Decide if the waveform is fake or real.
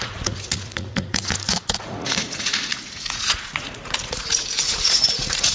fake